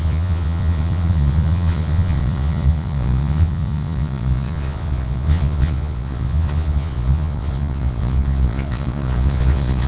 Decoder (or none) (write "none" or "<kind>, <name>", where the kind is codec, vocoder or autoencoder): vocoder, Vocos